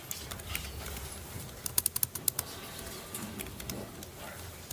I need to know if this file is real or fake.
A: real